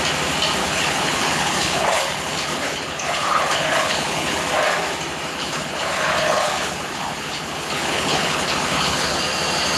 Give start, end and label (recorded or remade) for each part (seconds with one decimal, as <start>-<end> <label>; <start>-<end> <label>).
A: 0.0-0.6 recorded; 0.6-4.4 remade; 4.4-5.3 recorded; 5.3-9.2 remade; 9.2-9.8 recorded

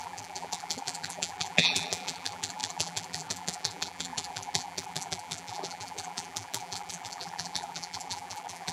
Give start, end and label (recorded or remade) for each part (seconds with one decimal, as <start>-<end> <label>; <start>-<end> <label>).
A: 0.0-8.7 remade

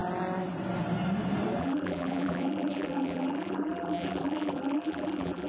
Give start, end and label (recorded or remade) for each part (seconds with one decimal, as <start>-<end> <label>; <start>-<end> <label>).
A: 0.0-1.6 recorded; 1.6-5.5 remade

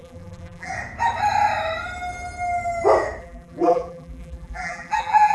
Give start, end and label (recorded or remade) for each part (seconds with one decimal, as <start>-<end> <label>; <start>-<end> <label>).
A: 0.0-0.7 remade; 0.7-3.2 recorded; 3.2-5.3 remade

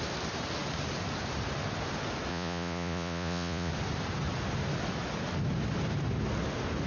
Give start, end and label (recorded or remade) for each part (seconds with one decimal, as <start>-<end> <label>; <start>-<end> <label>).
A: 0.0-2.3 recorded; 2.3-3.7 remade; 3.7-6.9 recorded

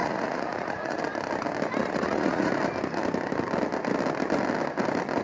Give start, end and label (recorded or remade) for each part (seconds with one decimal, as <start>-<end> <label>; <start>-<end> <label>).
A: 0.0-1.0 remade; 1.0-1.8 recorded; 1.8-2.5 remade; 2.5-5.2 recorded

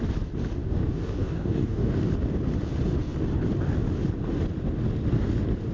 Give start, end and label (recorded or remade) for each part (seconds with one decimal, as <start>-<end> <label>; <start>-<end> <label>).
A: 0.0-0.6 recorded; 0.6-2.1 remade; 2.1-5.7 recorded